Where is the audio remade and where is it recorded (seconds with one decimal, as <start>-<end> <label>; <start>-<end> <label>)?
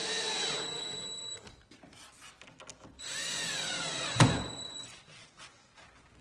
0.0-3.0 recorded; 3.0-6.2 remade